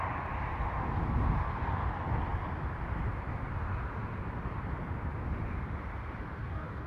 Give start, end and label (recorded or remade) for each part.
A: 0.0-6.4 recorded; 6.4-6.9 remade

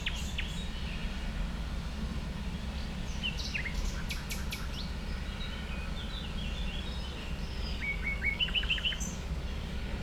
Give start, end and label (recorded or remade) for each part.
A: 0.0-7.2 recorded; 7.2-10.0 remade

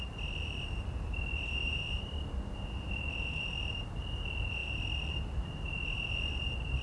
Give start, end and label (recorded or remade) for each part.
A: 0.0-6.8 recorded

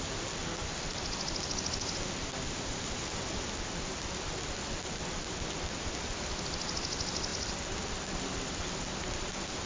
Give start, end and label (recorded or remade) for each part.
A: 0.0-9.7 recorded